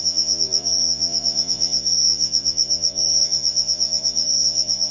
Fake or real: fake